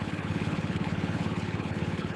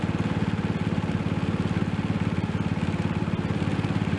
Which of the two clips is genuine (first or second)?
second